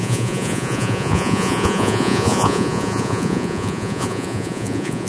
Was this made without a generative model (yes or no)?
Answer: no